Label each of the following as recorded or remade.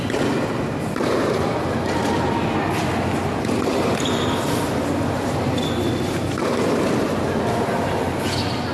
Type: recorded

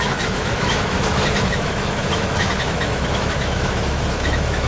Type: remade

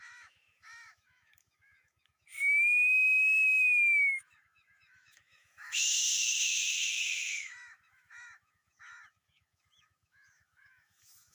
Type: remade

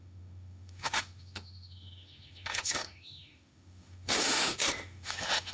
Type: remade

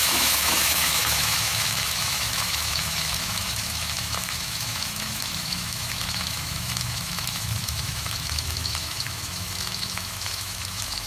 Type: remade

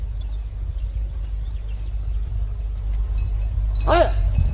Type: recorded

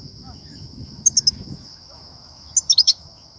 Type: remade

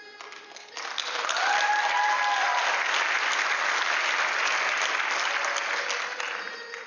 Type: recorded